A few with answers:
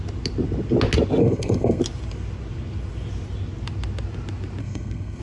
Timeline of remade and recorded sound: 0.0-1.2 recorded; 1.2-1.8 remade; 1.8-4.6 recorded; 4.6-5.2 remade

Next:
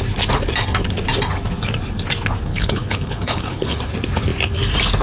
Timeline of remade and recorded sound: 0.0-2.5 recorded; 2.5-3.8 remade; 3.8-5.0 recorded

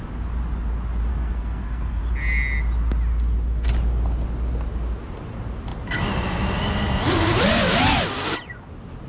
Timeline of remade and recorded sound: 0.0-1.1 recorded; 1.1-2.0 remade; 2.0-9.1 recorded

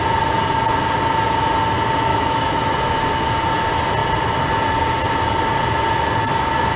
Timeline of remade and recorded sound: 0.0-2.1 recorded; 2.1-2.7 remade; 2.7-6.8 recorded

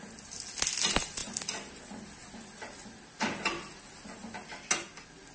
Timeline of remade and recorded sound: 0.0-5.3 recorded

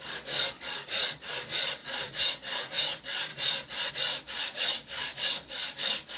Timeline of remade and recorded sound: 0.0-3.3 remade; 3.3-3.9 recorded; 3.9-6.2 remade

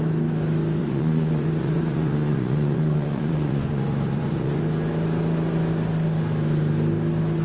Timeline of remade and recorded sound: 0.0-0.8 recorded; 0.8-4.6 remade; 4.6-7.4 recorded

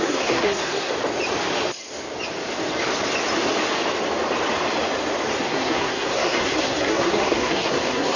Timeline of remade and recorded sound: 0.0-0.9 remade; 0.9-5.4 recorded; 5.4-8.2 remade